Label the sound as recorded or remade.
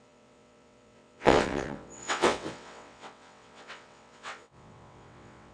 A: remade